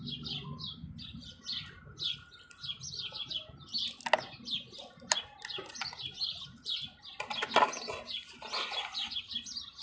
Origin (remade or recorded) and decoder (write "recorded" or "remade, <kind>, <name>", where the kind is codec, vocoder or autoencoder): recorded